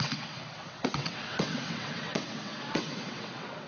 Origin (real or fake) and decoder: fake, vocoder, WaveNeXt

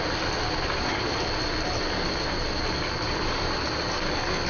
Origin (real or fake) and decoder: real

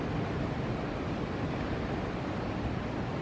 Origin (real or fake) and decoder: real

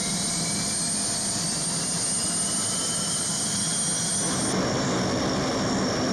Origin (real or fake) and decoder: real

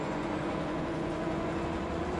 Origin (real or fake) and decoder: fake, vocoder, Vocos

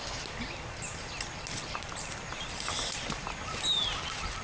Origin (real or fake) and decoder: real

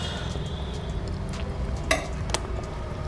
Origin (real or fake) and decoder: real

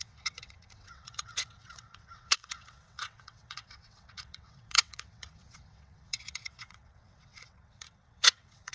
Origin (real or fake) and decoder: fake, vocoder, WaveNeXt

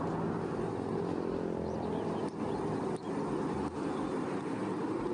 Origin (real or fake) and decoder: real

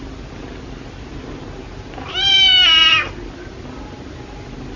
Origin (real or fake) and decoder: real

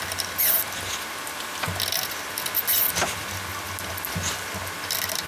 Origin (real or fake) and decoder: real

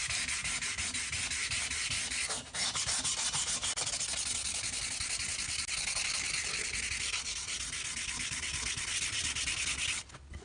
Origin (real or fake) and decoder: real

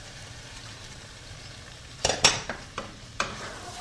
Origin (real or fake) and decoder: fake, vocoder, BigVGAN v2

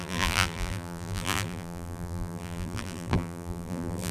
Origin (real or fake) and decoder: fake, vocoder, BigVGAN v2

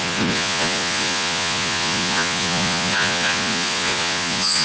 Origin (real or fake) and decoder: fake, vocoder, Vocos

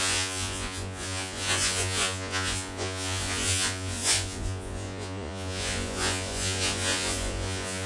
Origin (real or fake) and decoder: fake, vocoder, Vocos